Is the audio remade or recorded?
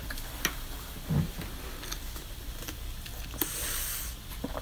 recorded